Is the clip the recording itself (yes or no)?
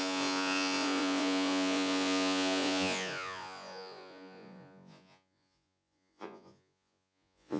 no